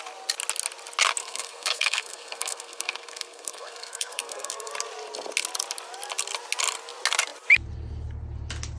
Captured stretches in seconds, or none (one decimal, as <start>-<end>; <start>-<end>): 0.0-1.2; 4.7-8.8